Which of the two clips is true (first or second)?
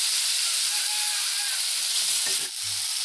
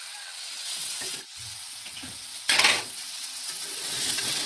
first